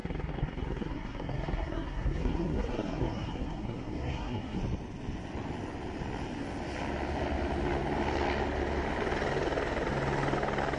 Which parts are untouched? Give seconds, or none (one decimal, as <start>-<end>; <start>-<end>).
4.6-10.8

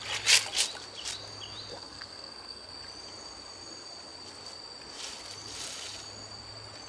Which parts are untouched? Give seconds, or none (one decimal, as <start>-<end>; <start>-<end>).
0.0-1.7; 2.7-6.9